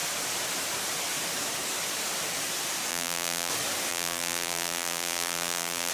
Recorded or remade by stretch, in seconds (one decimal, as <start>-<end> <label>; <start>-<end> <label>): 0.0-2.9 recorded; 2.9-3.5 remade; 3.5-3.9 recorded; 3.9-5.9 remade